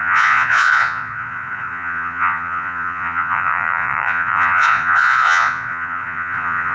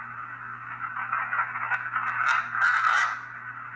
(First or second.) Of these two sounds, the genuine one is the second